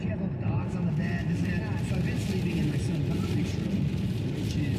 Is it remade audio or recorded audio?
recorded